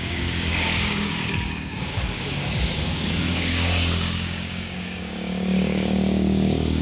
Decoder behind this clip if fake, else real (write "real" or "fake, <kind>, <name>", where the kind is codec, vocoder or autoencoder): fake, codec, DAC